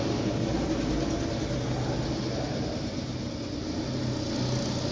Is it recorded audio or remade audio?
recorded